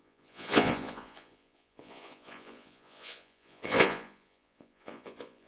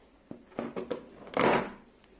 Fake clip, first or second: first